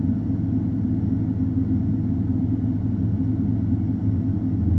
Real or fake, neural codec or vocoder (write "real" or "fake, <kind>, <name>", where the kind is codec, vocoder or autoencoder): real